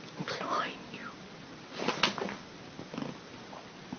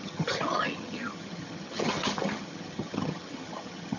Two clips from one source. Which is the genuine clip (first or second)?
first